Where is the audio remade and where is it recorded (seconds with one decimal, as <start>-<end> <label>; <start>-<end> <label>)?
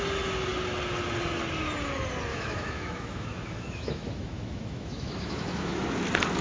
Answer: 0.0-2.3 recorded; 2.3-5.8 remade; 5.8-6.4 recorded